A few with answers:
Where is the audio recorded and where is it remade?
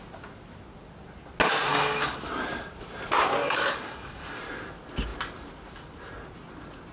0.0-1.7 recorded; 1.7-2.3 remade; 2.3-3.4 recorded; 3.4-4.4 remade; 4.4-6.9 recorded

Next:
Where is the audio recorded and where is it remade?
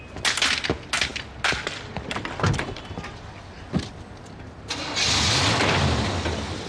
0.0-6.7 recorded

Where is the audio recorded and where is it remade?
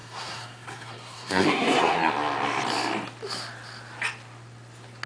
0.0-2.1 remade; 2.1-5.1 recorded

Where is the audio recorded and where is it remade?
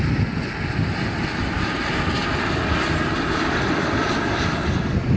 0.0-5.2 recorded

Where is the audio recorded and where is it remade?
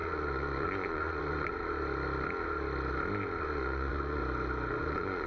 0.0-1.6 remade; 1.6-3.4 recorded; 3.4-4.2 remade; 4.2-4.8 recorded; 4.8-5.3 remade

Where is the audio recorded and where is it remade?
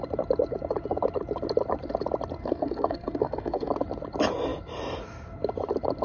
0.0-2.4 recorded; 2.4-3.7 remade; 3.7-6.0 recorded